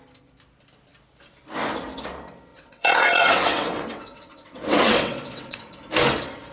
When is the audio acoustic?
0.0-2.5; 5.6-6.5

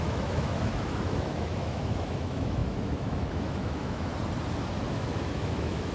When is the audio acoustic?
4.1-4.9

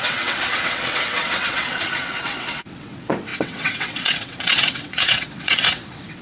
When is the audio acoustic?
none

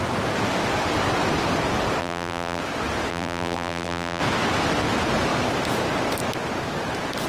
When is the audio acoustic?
0.0-2.0; 2.6-3.1; 4.2-7.3